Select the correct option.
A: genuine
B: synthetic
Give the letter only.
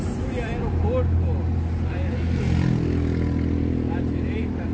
A